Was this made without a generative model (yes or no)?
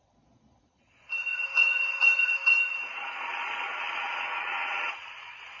no